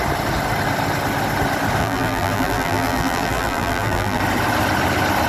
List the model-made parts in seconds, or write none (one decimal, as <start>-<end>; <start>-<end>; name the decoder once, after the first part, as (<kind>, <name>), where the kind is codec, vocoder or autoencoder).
1.8-4.2 (vocoder, BigVGAN v2)